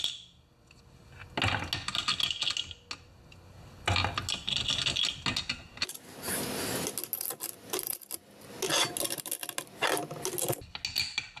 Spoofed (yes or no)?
no